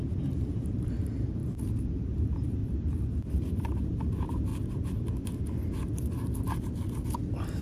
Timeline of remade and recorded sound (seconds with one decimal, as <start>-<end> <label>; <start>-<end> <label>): 0.0-1.4 remade; 1.4-2.0 recorded; 2.0-2.6 remade; 2.6-3.5 recorded; 3.5-4.5 remade; 4.5-7.6 recorded